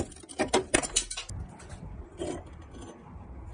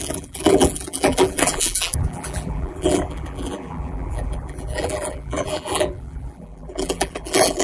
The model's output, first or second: second